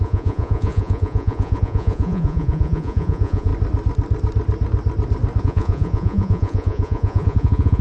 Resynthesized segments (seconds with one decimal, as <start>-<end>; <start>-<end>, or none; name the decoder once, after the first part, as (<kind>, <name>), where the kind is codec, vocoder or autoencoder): 0.0-3.5 (vocoder, Vocos); 5.4-7.8